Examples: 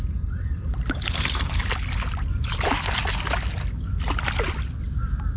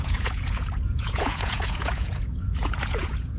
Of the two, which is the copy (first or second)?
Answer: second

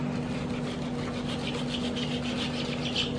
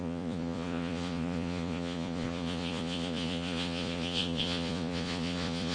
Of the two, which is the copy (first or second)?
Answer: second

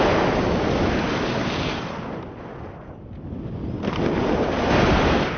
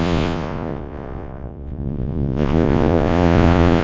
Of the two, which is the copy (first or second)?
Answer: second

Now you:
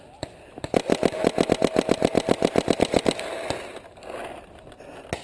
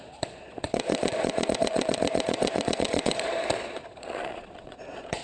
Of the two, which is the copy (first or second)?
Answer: second